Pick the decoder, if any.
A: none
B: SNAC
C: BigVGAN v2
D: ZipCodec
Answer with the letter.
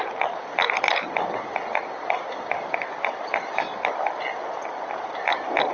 A